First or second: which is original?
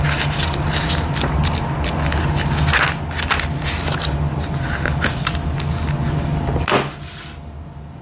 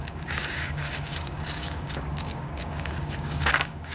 first